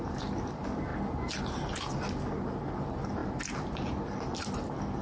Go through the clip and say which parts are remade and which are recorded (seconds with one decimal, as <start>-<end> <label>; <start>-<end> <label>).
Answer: 0.0-5.0 recorded